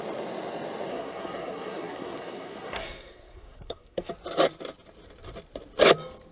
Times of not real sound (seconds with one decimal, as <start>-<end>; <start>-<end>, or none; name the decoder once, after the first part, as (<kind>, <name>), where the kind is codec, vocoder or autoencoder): 0.9-4.1 (codec, SNAC)